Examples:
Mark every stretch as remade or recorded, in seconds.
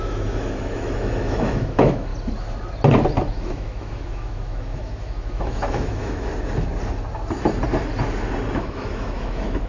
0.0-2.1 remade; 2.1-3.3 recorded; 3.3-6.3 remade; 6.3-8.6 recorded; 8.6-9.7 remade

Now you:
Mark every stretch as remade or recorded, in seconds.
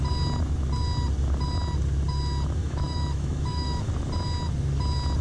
0.0-2.6 recorded; 2.6-3.9 remade; 3.9-5.2 recorded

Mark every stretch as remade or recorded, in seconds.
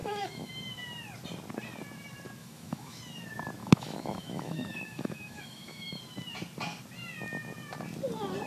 0.0-0.5 remade; 0.5-2.4 recorded; 2.4-3.0 remade; 3.0-3.6 recorded; 3.6-6.0 remade; 6.0-8.5 recorded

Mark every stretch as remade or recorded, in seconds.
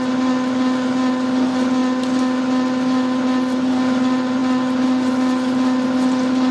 0.0-6.5 recorded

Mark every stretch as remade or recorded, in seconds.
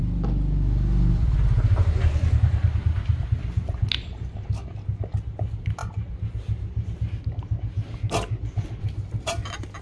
0.0-9.8 recorded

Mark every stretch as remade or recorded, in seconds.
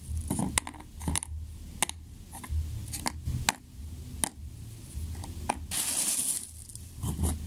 0.0-7.5 recorded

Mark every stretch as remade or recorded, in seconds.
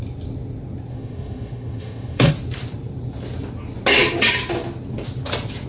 0.0-0.9 recorded; 0.9-2.3 remade; 2.3-5.7 recorded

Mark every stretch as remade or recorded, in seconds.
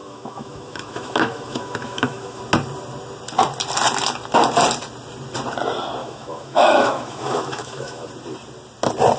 0.0-2.4 remade; 2.4-6.0 recorded; 6.0-8.1 remade; 8.1-9.2 recorded